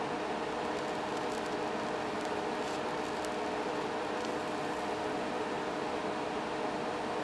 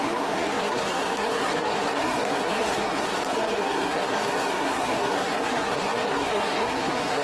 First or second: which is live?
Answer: first